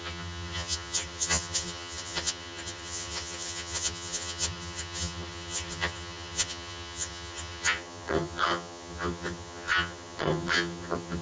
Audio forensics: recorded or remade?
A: remade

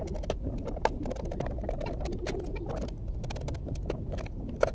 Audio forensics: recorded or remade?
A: recorded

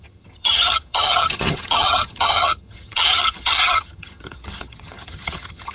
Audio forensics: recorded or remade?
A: remade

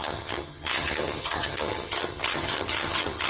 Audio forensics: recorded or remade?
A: remade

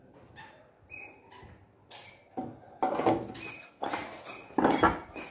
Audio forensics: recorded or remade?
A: recorded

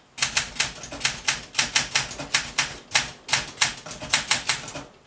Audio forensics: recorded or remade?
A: recorded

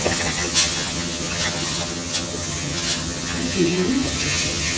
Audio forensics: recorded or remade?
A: remade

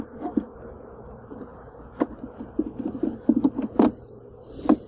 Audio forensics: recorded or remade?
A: recorded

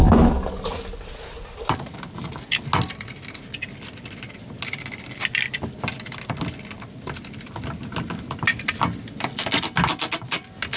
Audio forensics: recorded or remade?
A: recorded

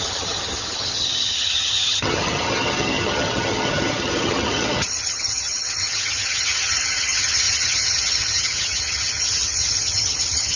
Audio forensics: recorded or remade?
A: remade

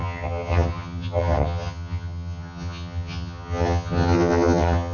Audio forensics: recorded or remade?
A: remade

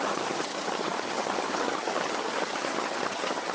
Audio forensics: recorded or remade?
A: remade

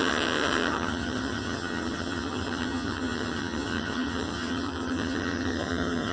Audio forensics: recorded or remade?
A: remade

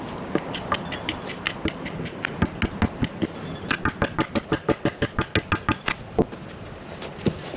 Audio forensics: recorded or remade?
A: recorded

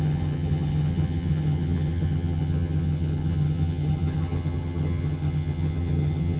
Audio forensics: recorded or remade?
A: remade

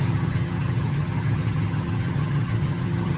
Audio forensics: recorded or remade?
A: remade